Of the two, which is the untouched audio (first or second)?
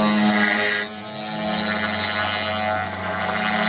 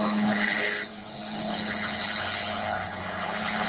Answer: first